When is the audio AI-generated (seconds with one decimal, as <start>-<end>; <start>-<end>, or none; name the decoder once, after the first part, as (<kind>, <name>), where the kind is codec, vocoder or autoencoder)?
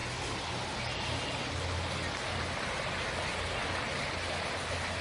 none